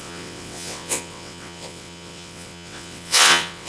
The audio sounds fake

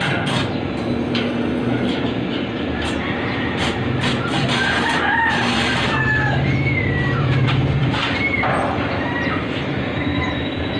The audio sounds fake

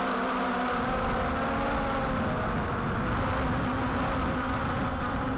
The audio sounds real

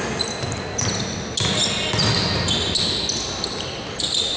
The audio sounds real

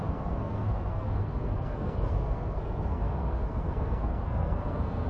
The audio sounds fake